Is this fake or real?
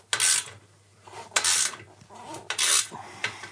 real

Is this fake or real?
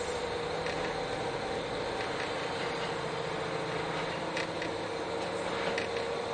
real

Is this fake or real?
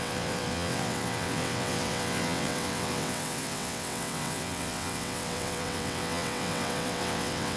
fake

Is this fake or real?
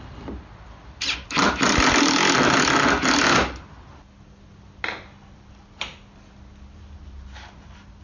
real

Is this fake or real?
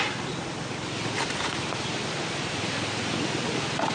real